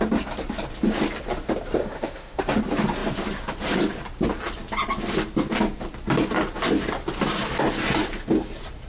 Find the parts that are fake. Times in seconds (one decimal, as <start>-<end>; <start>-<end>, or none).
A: 1.8-2.4